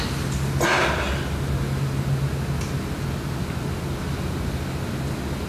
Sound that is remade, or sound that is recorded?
recorded